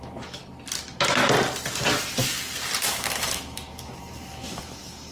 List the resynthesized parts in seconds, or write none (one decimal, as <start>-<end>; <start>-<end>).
0.0-0.4; 2.9-5.1